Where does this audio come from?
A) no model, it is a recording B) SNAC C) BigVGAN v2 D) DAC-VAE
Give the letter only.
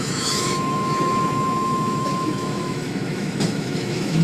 D